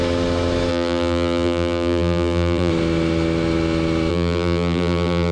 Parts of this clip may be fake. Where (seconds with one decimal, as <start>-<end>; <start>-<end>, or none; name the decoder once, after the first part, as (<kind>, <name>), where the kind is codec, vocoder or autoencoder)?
0.7-2.7 (vocoder, BigVGAN v2); 4.1-5.3